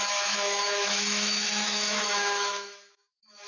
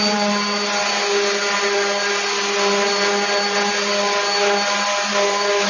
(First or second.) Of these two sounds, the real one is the second